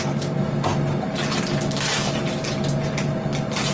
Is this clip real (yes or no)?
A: yes